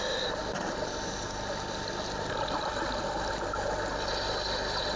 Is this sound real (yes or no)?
yes